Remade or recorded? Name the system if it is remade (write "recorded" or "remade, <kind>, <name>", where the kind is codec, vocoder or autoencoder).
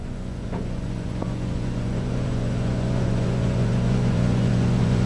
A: remade, vocoder, Vocos